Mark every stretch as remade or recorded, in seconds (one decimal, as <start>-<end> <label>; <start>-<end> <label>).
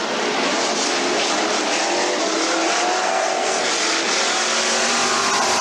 0.0-3.0 recorded; 3.0-3.7 remade; 3.7-5.6 recorded